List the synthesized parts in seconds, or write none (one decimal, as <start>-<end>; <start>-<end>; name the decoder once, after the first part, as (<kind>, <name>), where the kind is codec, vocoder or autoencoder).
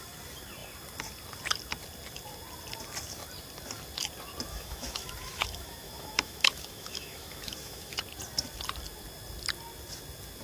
4.5-8.0 (autoencoder, DAC-VAE)